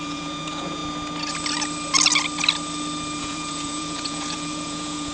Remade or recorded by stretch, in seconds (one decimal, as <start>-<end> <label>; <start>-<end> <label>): 0.0-0.8 remade; 0.8-3.2 recorded; 3.2-5.1 remade

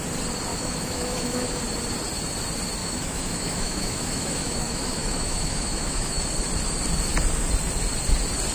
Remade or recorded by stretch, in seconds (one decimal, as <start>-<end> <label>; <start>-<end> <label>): 0.0-0.5 recorded; 0.5-1.6 remade; 1.6-2.8 recorded; 2.8-6.2 remade; 6.2-8.5 recorded

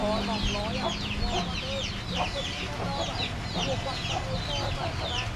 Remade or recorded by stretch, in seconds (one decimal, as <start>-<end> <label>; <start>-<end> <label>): 0.0-5.4 recorded

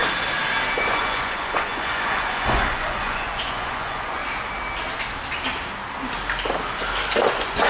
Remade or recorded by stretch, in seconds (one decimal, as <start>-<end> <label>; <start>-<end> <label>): 0.0-0.8 recorded; 0.8-4.2 remade; 4.2-7.3 recorded; 7.3-7.7 remade

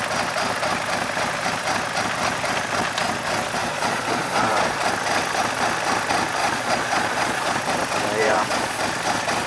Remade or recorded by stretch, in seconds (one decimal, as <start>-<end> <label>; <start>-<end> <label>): 0.0-3.6 recorded; 3.6-4.8 remade; 4.8-6.4 recorded; 6.4-7.6 remade; 7.6-8.2 recorded; 8.2-8.8 remade; 8.8-9.5 recorded